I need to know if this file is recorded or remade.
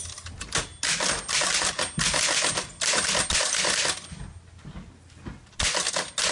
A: recorded